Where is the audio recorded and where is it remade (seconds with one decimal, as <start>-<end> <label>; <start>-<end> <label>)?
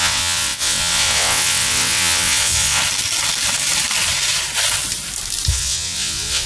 0.0-2.8 remade; 2.8-5.5 recorded; 5.5-6.5 remade